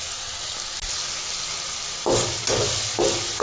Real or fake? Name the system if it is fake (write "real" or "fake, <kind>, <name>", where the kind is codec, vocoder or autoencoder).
real